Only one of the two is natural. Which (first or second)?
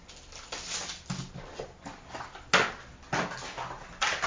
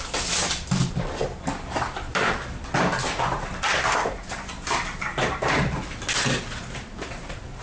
first